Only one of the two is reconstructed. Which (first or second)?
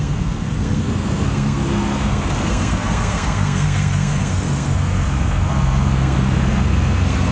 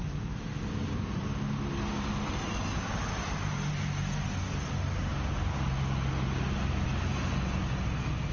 first